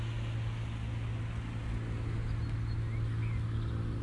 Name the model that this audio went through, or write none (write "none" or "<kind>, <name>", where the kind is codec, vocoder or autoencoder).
none